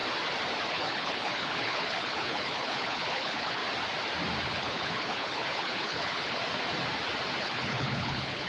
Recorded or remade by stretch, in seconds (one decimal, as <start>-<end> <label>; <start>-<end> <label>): 0.0-0.7 recorded; 0.7-3.6 remade; 3.6-4.4 recorded; 4.4-6.4 remade; 6.4-7.4 recorded; 7.4-8.5 remade